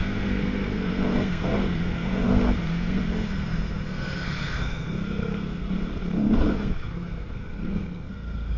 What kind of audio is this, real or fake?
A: fake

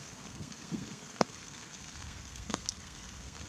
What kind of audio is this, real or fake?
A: fake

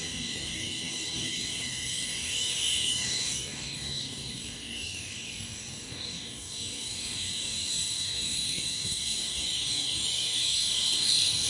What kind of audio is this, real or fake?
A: fake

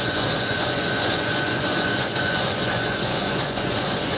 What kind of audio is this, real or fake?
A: fake